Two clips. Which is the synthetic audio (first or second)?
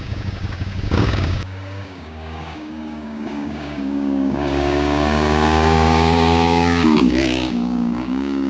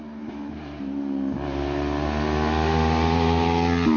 first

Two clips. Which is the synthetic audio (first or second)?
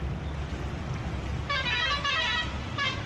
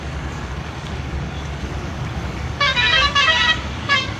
second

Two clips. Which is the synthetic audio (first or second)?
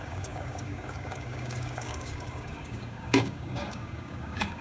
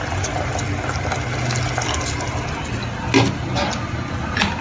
first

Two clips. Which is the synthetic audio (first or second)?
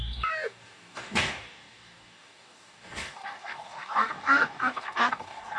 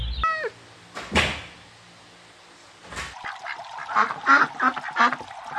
first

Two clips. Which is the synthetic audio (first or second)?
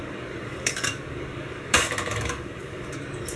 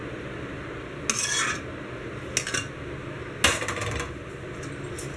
first